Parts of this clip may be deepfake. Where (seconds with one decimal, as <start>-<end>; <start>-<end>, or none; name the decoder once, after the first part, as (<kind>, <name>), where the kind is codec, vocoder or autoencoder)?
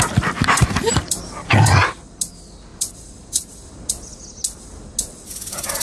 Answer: 1.0-1.5 (vocoder, BigVGAN v2); 2.7-3.7